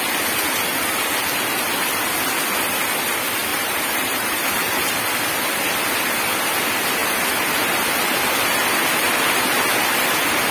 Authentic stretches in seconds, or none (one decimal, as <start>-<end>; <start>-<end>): 0.0-3.5; 4.9-10.5